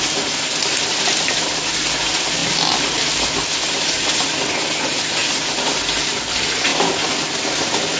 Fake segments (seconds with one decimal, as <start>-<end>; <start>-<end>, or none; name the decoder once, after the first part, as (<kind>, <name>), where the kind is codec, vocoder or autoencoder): none